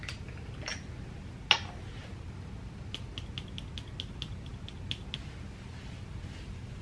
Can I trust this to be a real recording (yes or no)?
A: yes